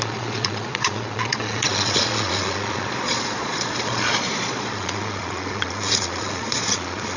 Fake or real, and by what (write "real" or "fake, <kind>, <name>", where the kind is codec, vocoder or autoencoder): fake, vocoder, Vocos